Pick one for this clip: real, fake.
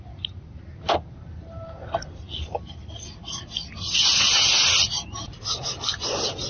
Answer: real